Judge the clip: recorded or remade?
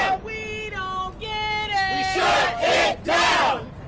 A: recorded